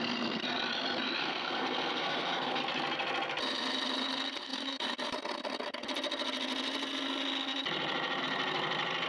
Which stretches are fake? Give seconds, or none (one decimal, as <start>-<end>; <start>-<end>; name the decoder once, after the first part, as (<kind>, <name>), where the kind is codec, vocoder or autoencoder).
1.2-2.6 (codec, SNAC)